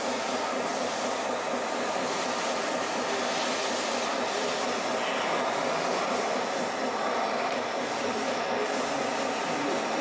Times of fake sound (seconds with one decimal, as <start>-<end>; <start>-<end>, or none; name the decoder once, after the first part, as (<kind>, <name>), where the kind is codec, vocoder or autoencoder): none